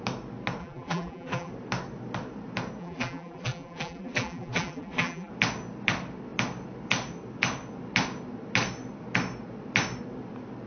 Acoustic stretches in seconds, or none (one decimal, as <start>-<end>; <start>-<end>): 0.0-0.6; 1.5-2.8; 5.3-10.7